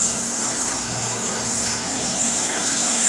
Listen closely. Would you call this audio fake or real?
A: fake